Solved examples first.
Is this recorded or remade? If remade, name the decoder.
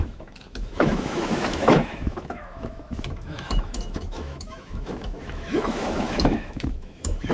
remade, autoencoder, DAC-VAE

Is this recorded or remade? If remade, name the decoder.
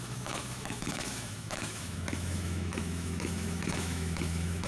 remade, autoencoder, DAC-VAE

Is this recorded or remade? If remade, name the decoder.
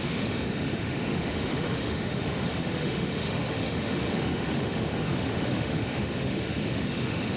remade, autoencoder, DAC-VAE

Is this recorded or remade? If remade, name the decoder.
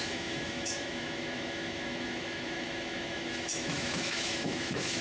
remade, autoencoder, DAC-VAE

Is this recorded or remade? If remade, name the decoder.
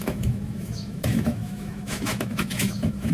remade, autoencoder, DAC-VAE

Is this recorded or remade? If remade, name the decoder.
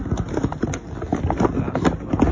recorded